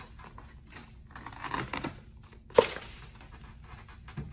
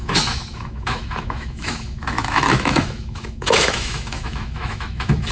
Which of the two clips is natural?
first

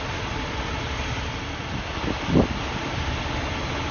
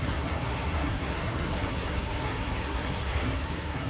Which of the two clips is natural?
first